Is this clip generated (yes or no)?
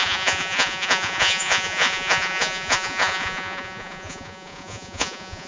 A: yes